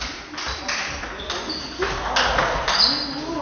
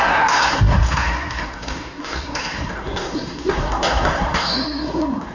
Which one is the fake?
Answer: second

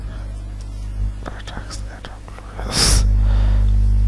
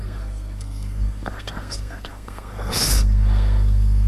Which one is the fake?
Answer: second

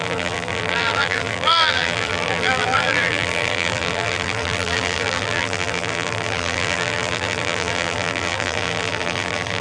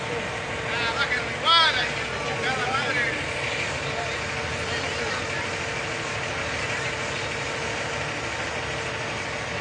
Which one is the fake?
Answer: first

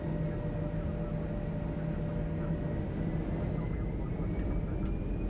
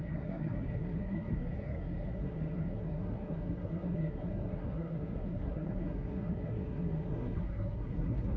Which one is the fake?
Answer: second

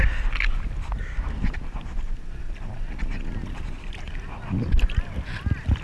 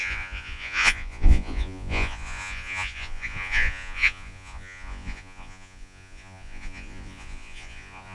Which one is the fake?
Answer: second